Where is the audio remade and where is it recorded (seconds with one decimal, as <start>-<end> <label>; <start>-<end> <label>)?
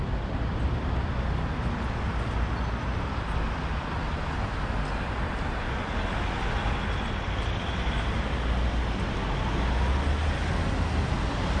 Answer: 0.0-11.6 recorded